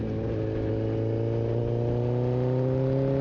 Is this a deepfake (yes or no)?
no